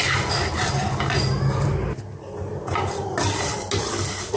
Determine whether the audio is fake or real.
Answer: real